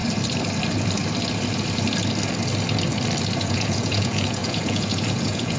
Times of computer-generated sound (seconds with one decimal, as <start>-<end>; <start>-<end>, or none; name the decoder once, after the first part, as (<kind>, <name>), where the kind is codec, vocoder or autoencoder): 3.4-5.6 (vocoder, Vocos)